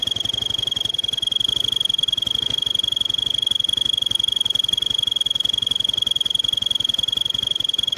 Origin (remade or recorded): recorded